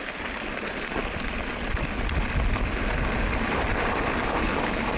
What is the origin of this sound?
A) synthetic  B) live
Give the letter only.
B